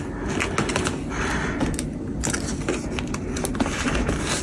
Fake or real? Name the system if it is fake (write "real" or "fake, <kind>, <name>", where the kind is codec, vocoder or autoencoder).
real